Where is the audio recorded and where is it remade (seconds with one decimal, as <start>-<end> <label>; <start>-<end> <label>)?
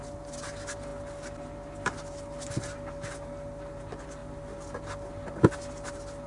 0.0-6.3 recorded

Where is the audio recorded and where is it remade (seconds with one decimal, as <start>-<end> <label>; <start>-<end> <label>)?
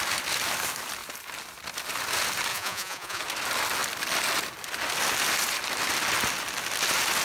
0.0-2.5 recorded; 2.5-3.2 remade; 3.2-7.2 recorded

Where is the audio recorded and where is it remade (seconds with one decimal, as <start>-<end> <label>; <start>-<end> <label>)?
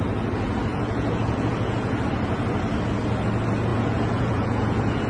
0.0-0.7 recorded; 0.7-2.0 remade; 2.0-3.7 recorded; 3.7-5.1 remade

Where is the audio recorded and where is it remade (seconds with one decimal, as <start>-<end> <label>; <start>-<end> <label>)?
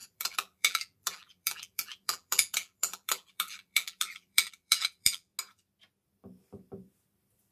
0.0-5.3 remade; 5.3-7.5 recorded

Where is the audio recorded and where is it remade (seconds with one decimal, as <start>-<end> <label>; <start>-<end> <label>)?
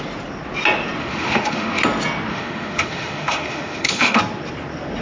0.0-1.0 recorded; 1.0-1.8 remade; 1.8-2.3 recorded; 2.3-4.2 remade; 4.2-5.0 recorded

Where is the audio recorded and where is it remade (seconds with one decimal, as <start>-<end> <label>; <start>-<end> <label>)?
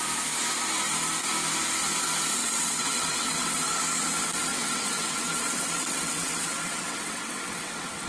0.0-2.4 recorded; 2.4-3.7 remade; 3.7-4.5 recorded; 4.5-8.1 remade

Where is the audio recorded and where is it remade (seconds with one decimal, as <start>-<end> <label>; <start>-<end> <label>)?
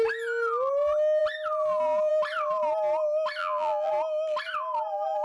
0.0-3.4 recorded; 3.4-3.9 remade; 3.9-5.2 recorded